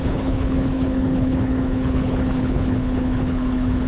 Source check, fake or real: fake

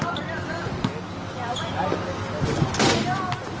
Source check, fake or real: real